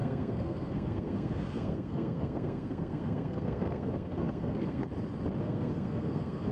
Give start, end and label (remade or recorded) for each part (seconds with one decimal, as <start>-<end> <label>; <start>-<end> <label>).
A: 0.0-4.8 remade; 4.8-5.4 recorded; 5.4-6.5 remade